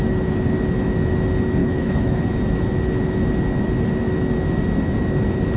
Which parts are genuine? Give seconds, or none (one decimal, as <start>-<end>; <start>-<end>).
0.0-1.6; 2.2-5.6